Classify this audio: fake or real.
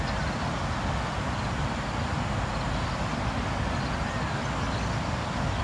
real